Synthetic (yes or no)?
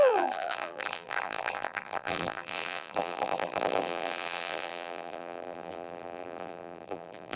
yes